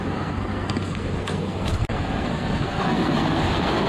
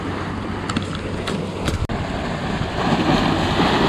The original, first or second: second